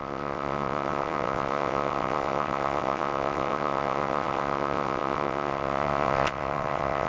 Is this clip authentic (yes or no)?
no